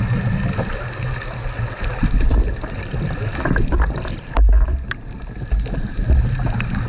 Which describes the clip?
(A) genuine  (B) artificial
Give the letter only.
A